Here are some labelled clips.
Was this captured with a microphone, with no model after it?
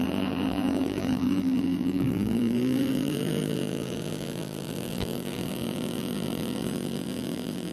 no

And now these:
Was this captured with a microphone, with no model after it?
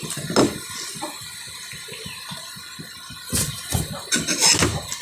yes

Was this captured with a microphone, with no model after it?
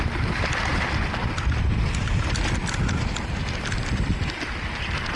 yes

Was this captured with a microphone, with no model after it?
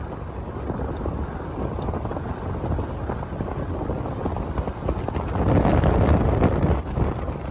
yes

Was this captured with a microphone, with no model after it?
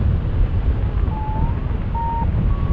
yes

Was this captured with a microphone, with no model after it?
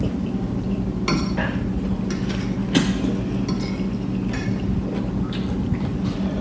yes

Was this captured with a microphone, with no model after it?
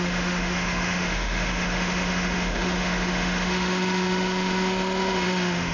no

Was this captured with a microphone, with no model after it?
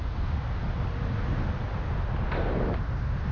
yes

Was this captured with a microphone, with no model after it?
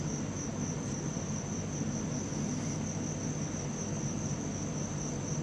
yes